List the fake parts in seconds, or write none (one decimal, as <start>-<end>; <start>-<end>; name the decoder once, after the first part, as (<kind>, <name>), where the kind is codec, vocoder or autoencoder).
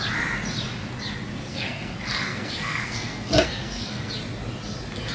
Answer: 1.5-4.1 (codec, SNAC)